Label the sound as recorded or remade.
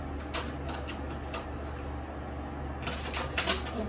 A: recorded